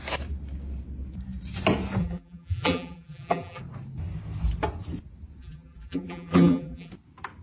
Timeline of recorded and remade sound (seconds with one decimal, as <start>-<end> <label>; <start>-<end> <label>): 0.0-2.0 recorded; 2.0-3.6 remade; 3.6-5.4 recorded; 5.4-6.9 remade; 6.9-7.4 recorded